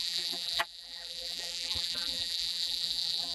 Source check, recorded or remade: remade